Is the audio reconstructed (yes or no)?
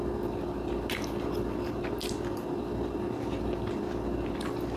no